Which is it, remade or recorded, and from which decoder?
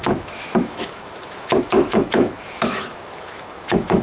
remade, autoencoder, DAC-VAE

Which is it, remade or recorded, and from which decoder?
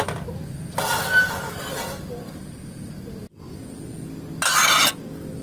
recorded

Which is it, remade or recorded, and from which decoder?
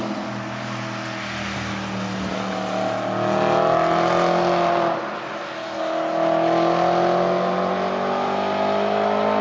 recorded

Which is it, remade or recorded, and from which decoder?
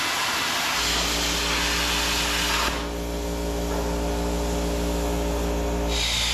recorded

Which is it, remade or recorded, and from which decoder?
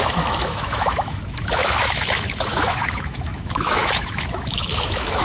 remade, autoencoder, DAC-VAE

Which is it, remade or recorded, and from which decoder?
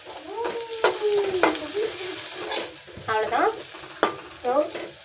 recorded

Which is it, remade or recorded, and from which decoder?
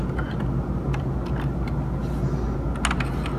recorded